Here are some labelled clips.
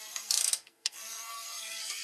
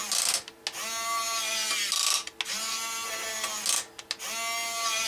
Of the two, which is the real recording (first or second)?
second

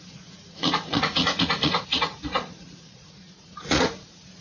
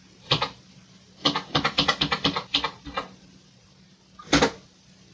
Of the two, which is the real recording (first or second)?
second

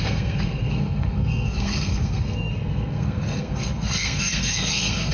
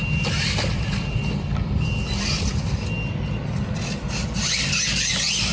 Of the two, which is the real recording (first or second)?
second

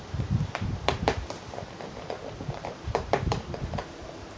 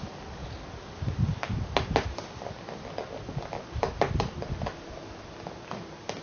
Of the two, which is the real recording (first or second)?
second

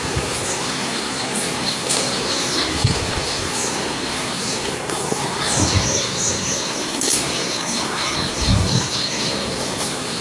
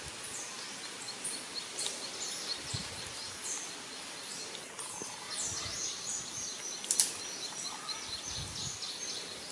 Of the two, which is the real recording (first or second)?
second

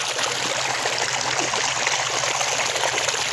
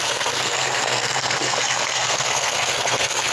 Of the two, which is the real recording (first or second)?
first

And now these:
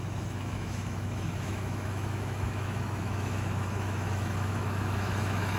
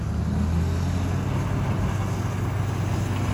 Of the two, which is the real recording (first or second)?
second